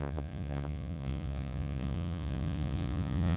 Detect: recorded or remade remade